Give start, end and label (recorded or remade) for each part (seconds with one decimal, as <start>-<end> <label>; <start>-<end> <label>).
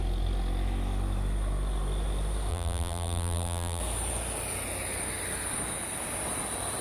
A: 0.0-2.5 recorded; 2.5-3.8 remade; 3.8-6.8 recorded